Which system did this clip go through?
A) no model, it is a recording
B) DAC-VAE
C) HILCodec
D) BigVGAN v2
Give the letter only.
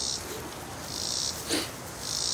A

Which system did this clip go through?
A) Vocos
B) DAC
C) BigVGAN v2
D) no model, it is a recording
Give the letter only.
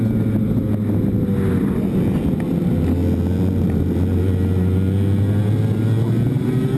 D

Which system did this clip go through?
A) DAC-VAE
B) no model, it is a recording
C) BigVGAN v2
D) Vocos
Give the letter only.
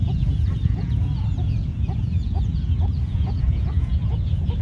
D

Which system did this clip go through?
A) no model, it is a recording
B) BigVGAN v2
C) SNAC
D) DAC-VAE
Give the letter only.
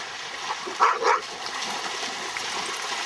A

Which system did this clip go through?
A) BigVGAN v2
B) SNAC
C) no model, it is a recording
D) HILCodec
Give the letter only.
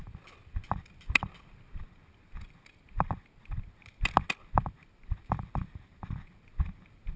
C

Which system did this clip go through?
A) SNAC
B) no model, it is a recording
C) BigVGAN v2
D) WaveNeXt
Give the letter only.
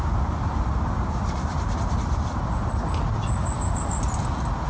B